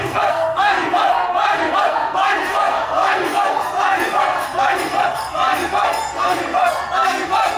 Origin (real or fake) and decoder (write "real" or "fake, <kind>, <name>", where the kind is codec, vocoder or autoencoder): fake, codec, SNAC